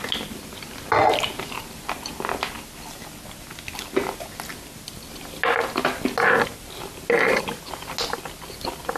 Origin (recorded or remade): recorded